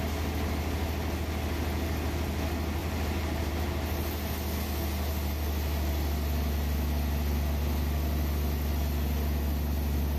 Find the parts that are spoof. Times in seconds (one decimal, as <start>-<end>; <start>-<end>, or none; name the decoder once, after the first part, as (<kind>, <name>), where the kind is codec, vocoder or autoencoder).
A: 2.8-3.5 (vocoder, BigVGAN v2)